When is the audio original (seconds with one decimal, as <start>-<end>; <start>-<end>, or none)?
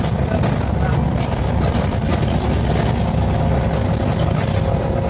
0.0-5.1